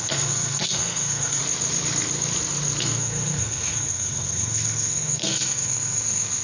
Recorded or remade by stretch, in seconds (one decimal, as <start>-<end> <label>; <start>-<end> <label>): 0.0-1.4 remade; 1.4-2.8 recorded; 2.8-6.4 remade